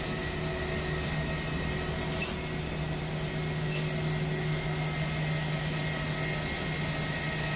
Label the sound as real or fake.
real